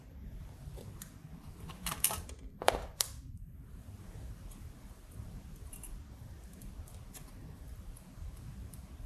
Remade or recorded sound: remade